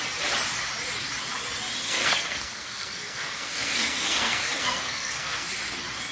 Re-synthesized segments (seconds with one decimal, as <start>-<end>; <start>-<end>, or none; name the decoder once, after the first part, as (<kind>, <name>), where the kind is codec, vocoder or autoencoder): 1.8-5.5 (codec, SNAC)

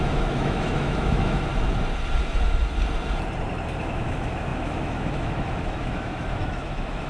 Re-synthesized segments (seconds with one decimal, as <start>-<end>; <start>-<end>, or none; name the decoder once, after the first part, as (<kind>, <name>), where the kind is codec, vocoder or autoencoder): 0.0-1.5 (autoencoder, DAC-VAE); 3.8-7.1

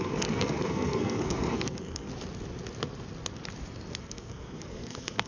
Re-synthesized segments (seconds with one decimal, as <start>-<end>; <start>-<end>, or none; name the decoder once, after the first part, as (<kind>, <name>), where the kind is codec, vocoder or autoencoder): 0.0-2.1 (codec, SNAC); 4.0-5.3

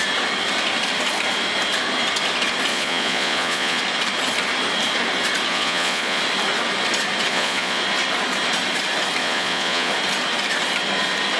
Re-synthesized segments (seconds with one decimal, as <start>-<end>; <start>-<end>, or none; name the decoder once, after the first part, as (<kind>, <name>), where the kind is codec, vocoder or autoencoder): 2.7-3.8 (vocoder, Vocos); 5.5-6.2; 7.3-7.8; 9.2-9.9